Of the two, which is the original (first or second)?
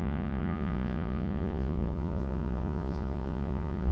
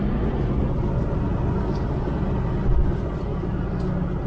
second